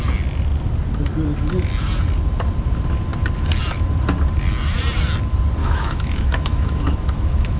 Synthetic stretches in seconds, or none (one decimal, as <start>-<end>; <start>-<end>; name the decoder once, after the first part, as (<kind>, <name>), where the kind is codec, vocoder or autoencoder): 5.6-7.6 (autoencoder, DAC-VAE)